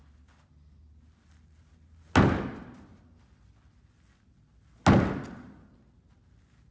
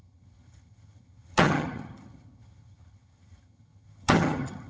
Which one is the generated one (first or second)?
second